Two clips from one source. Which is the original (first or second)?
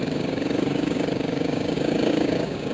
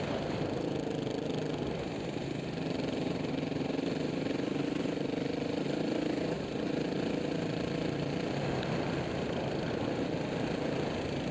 second